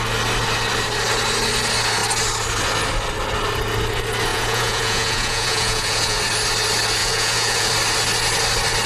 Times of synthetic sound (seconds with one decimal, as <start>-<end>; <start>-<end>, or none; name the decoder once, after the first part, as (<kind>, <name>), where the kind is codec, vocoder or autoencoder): 4.3-6.2 (vocoder, Vocos); 7.0-7.7